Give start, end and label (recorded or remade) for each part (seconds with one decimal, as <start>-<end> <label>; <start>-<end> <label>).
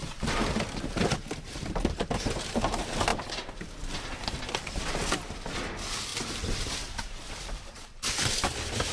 0.0-2.1 remade; 2.1-6.1 recorded; 6.1-8.0 remade; 8.0-8.9 recorded